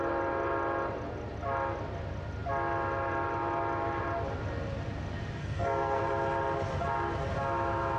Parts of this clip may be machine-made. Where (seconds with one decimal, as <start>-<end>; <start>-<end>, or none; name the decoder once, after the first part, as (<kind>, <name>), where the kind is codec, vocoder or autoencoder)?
5.4-6.0 (codec, SNAC)